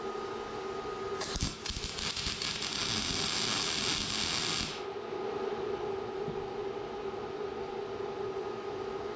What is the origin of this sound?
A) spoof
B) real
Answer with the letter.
B